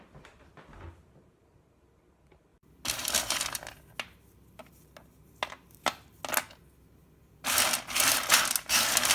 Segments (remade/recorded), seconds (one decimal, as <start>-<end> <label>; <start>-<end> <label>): 0.0-9.1 recorded